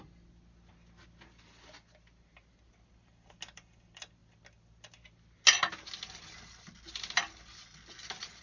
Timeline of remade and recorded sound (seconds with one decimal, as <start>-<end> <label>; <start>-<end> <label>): 0.0-8.4 recorded